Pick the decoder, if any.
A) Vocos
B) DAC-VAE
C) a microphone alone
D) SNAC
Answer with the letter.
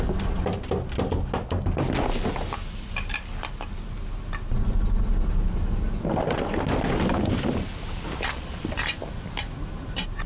C